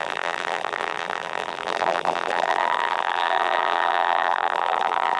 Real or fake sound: fake